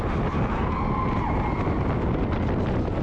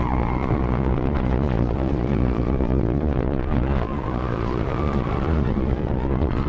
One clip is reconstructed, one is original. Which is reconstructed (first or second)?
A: second